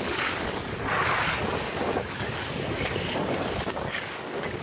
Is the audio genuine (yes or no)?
no